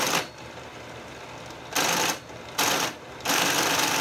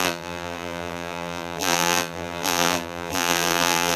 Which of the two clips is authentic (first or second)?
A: first